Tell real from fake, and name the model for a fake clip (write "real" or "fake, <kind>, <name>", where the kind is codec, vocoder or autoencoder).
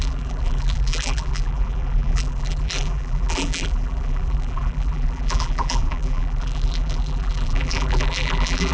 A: fake, vocoder, BigVGAN v2